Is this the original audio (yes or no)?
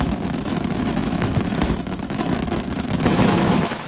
no